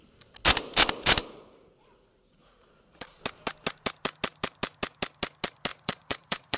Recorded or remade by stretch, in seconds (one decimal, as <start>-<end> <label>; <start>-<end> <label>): 0.0-1.2 recorded; 1.2-3.2 remade; 3.2-5.7 recorded; 5.7-6.6 remade